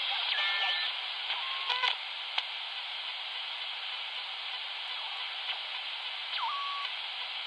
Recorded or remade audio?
recorded